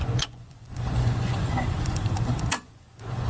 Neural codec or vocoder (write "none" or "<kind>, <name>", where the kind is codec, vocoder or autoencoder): vocoder, Vocos